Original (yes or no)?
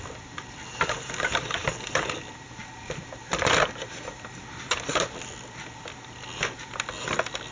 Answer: no